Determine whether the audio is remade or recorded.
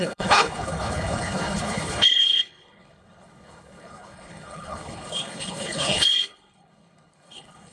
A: remade